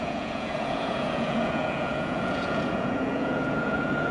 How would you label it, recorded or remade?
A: remade